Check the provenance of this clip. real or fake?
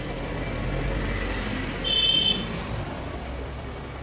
real